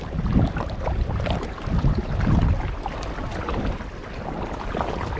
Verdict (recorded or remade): recorded